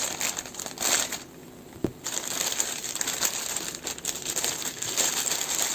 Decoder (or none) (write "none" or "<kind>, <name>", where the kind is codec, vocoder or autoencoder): none